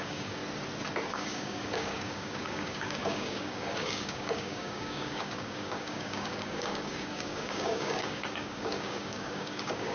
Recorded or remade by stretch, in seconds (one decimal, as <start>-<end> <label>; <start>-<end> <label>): 0.0-0.4 remade; 0.4-1.1 recorded; 1.1-9.9 remade